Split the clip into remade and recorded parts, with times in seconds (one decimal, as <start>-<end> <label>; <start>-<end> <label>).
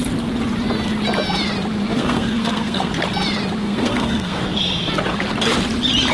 0.0-1.9 recorded; 1.9-2.9 remade; 2.9-3.6 recorded; 3.6-4.4 remade; 4.4-6.1 recorded